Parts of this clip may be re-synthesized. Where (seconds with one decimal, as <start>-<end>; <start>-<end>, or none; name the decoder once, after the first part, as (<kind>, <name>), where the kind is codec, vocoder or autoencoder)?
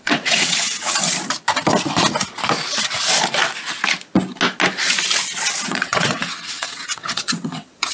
0.0-1.0 (vocoder, WaveNeXt); 5.7-7.9